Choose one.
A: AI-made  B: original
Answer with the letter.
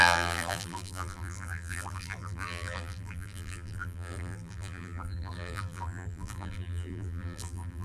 A